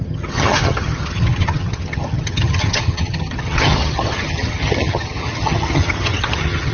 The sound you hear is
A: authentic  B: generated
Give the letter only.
B